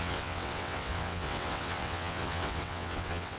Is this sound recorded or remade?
remade